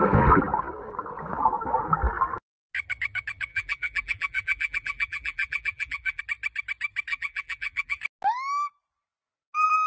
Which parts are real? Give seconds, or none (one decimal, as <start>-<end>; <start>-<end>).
0.0-3.5; 6.2-7.1; 8.0-9.9